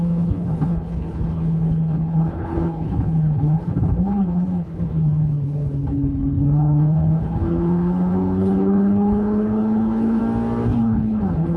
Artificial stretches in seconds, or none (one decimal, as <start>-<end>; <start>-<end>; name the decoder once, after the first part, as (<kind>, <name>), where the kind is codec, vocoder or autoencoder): 0.0-10.2 (codec, HILCodec); 10.8-11.6